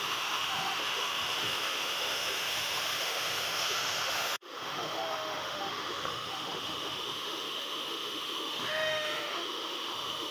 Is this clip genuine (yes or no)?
no